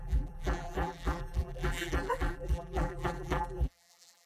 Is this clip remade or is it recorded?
remade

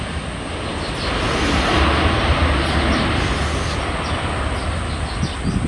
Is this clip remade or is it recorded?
recorded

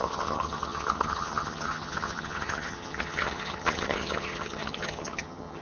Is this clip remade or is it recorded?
remade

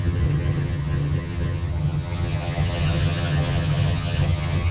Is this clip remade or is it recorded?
remade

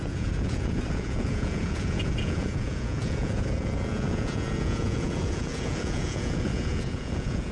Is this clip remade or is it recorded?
remade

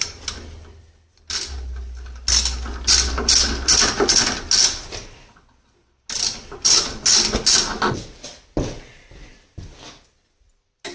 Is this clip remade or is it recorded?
recorded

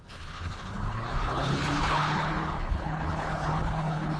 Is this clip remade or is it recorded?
remade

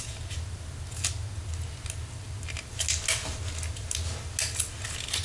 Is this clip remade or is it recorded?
recorded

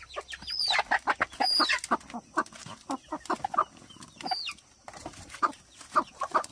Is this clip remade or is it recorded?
recorded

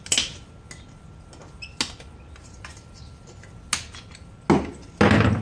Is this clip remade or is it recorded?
recorded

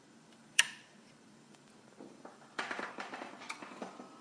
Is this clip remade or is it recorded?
remade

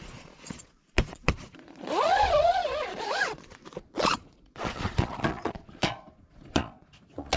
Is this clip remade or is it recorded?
remade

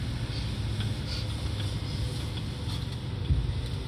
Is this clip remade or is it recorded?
recorded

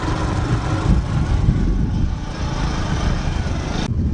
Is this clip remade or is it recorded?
recorded